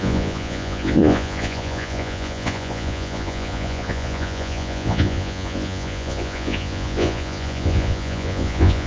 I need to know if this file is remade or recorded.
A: remade